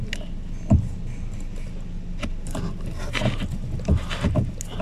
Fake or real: real